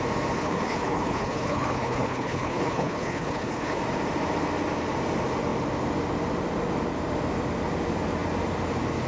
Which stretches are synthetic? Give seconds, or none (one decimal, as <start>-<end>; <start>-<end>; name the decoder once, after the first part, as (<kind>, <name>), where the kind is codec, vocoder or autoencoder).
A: 0.4-3.8 (codec, HILCodec)